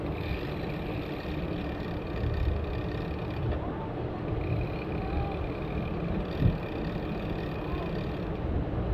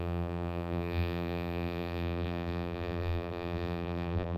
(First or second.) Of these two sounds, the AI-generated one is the second